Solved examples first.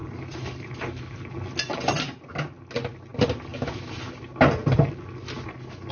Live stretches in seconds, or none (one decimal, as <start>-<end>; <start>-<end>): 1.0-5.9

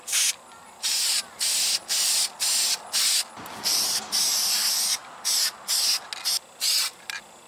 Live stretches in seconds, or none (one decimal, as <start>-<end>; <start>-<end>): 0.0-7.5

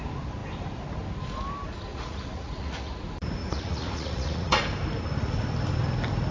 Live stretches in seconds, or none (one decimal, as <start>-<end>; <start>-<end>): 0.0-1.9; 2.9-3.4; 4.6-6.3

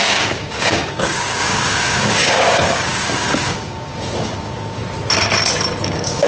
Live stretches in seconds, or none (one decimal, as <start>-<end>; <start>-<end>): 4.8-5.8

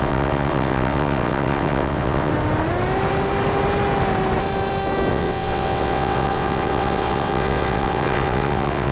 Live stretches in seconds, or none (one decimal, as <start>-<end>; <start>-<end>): 2.3-5.1

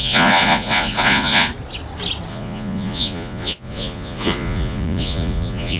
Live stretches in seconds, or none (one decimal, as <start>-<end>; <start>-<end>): 1.5-2.3